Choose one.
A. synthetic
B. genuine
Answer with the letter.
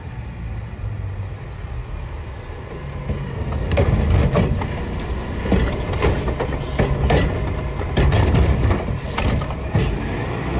B